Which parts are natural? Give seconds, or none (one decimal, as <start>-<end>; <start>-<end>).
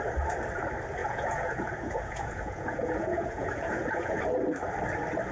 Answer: 0.0-1.0; 4.2-5.3